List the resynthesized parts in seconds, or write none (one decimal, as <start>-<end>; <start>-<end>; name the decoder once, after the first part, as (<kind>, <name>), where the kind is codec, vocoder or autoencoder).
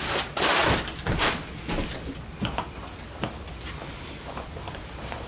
0.0-0.6 (vocoder, BigVGAN v2); 3.8-5.3